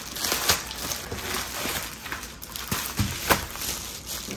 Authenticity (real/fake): real